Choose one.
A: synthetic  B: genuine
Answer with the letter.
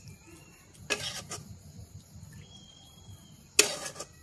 B